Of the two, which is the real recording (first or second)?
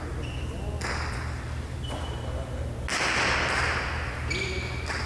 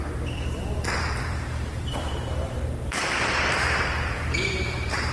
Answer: first